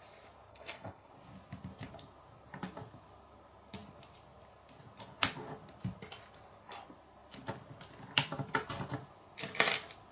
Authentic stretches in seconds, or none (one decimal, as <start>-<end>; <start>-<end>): 0.0-0.5; 1.1-10.1